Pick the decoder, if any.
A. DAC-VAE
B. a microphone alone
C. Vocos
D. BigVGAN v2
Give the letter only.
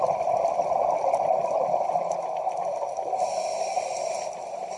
B